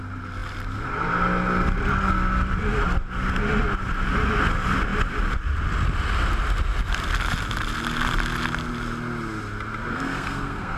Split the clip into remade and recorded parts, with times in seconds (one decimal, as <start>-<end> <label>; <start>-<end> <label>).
0.0-9.9 recorded; 9.9-10.8 remade